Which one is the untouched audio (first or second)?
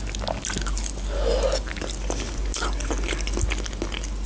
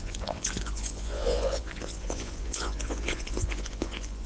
first